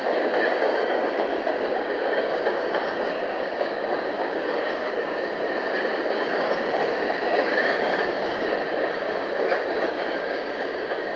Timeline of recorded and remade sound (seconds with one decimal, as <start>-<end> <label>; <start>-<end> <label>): 0.0-5.4 remade; 5.4-6.0 recorded; 6.0-11.2 remade